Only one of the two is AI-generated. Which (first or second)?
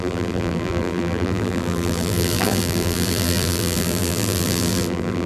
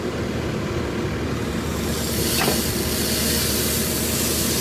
first